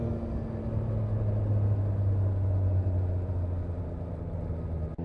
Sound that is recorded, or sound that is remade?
recorded